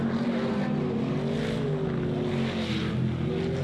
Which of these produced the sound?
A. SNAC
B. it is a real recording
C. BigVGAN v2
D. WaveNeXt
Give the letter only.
B